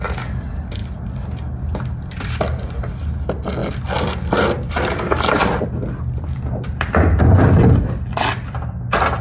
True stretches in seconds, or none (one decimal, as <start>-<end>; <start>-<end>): 0.0-9.2